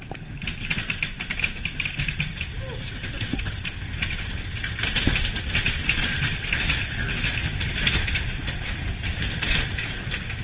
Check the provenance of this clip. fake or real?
real